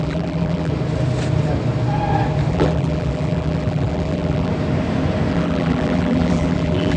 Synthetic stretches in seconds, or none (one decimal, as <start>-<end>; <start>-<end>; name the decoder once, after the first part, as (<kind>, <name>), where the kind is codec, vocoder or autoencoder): 0.0-0.7 (vocoder, BigVGAN v2); 2.5-4.5; 5.3-7.0